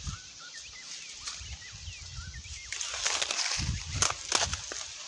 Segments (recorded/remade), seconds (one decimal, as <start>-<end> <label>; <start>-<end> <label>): 0.0-5.1 recorded